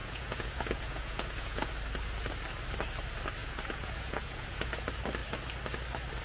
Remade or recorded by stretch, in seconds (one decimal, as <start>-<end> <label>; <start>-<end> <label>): 0.0-1.7 remade; 1.7-3.4 recorded; 3.4-4.7 remade; 4.7-6.2 recorded